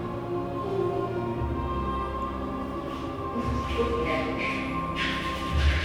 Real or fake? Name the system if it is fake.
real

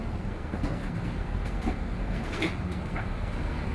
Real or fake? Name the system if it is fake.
fake, codec, SNAC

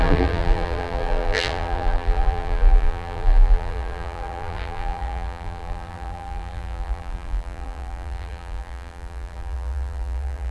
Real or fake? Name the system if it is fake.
fake, vocoder, BigVGAN v2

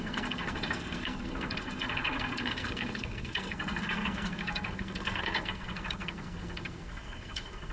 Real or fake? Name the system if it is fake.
fake, codec, SNAC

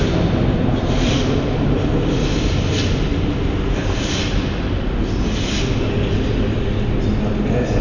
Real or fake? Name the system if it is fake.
real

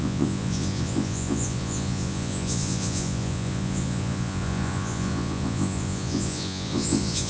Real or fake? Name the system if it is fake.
fake, vocoder, Vocos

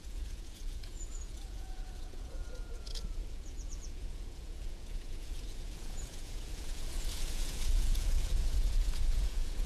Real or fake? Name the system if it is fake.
fake, vocoder, Vocos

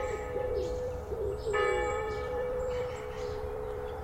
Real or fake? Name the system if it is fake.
fake, vocoder, BigVGAN v2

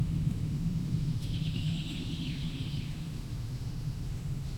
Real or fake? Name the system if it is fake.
fake, autoencoder, DAC-VAE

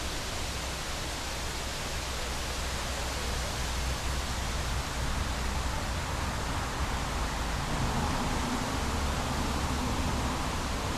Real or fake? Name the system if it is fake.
real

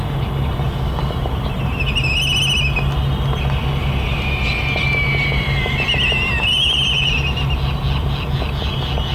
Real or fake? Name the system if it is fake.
real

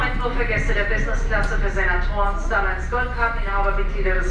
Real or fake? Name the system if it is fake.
real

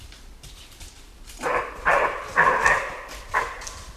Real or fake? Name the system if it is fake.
real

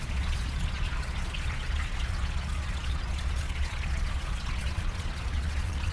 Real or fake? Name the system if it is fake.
fake, vocoder, Vocos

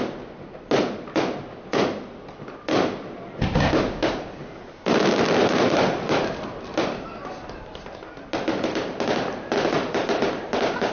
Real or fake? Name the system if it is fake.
real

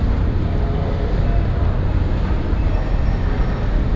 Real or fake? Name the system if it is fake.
real